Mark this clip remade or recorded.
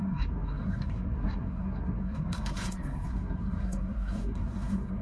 remade